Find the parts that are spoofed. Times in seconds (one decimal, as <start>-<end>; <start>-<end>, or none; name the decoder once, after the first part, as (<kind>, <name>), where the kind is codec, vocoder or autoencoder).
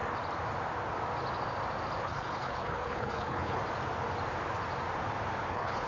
2.0-3.6 (codec, HILCodec); 5.5-5.9